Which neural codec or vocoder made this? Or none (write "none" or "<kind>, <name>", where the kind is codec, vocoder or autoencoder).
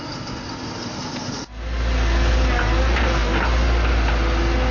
none